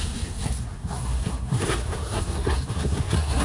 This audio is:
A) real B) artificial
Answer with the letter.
B